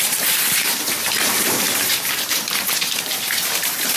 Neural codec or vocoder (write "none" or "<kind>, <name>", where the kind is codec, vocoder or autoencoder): vocoder, BigVGAN v2